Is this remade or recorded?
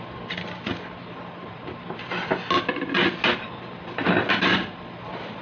recorded